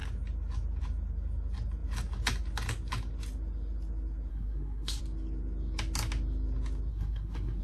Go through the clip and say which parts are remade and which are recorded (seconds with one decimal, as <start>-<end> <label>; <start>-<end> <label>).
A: 0.0-4.3 recorded; 4.3-5.0 remade; 5.0-6.9 recorded; 6.9-7.6 remade